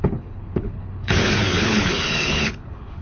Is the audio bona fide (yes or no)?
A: no